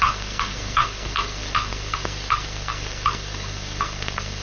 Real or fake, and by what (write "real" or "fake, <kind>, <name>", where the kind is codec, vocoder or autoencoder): fake, codec, SNAC